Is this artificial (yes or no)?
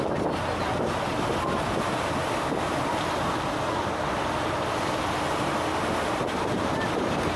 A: no